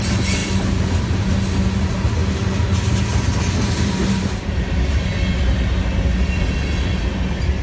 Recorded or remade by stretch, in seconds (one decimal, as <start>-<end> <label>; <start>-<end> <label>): 0.0-7.6 recorded